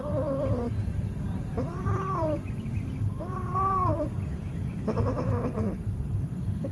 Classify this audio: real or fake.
fake